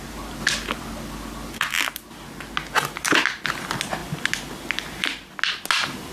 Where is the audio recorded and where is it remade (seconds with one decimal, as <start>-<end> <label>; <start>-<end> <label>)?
0.0-6.1 recorded